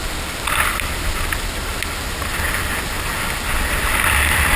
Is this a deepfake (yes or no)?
no